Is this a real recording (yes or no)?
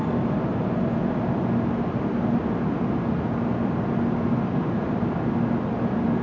yes